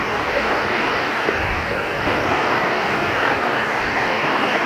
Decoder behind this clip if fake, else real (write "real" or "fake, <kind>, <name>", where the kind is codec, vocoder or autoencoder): fake, codec, DAC